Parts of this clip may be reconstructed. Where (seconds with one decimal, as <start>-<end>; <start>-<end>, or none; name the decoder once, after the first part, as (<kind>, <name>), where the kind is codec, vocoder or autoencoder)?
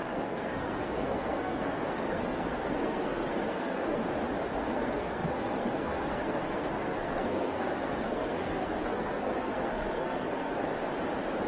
0.0-4.0 (codec, SNAC); 4.6-10.6